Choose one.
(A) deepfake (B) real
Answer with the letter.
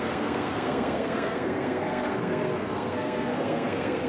A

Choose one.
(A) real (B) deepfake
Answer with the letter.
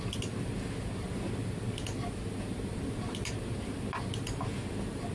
A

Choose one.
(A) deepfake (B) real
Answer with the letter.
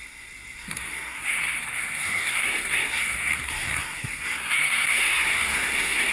A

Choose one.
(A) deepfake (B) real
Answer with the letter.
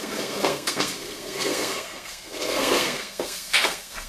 A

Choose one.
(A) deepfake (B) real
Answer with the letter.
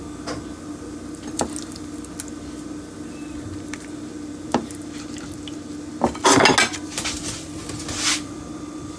B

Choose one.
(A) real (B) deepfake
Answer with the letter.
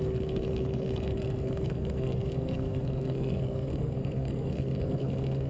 B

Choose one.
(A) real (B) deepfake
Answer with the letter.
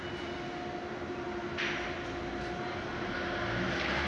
A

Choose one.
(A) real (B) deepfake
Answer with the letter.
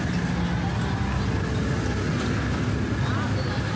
A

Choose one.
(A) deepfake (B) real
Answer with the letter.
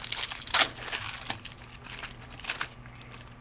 B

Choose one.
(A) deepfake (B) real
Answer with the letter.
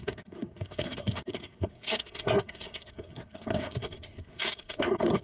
A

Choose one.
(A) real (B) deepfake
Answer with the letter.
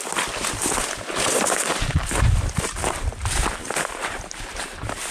A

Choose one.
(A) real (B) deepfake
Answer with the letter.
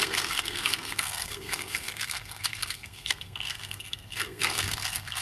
B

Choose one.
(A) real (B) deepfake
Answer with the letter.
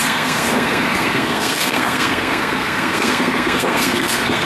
B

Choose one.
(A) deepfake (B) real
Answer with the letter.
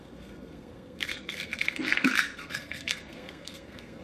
A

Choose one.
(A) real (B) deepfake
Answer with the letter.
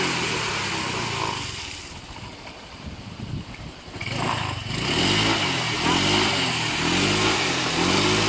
A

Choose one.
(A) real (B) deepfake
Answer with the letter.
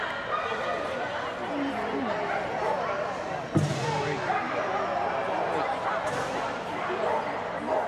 A